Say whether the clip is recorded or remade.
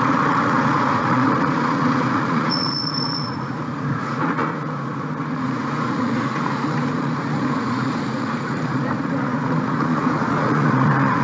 remade